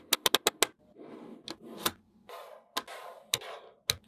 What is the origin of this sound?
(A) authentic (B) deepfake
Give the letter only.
A